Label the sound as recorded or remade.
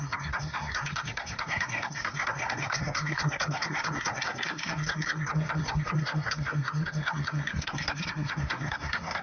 remade